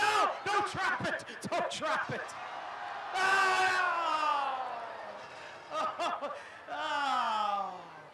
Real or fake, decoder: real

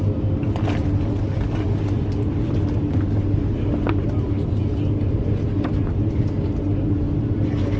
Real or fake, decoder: real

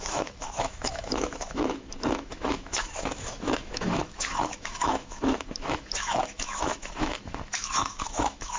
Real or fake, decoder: fake, autoencoder, DAC-VAE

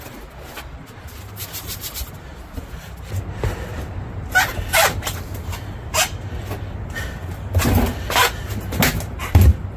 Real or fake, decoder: real